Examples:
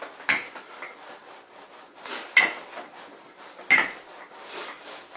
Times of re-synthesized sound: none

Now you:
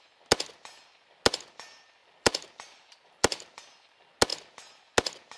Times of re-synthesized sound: 2.0-3.6 (vocoder, BigVGAN v2)

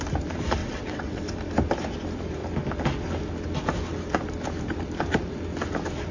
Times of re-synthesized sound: 0.6-1.2 (vocoder, WaveNeXt)

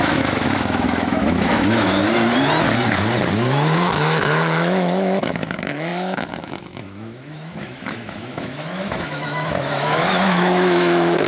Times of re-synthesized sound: 0.0-2.0 (autoencoder, DAC-VAE); 3.3-11.3